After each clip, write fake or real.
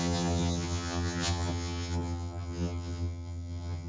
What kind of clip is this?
fake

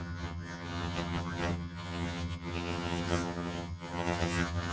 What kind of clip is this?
fake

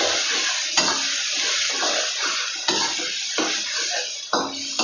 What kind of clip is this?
real